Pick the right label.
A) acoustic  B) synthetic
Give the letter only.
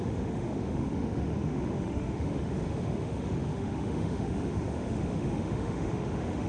B